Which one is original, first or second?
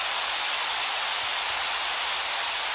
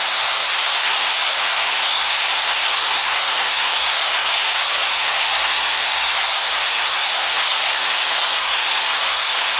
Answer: first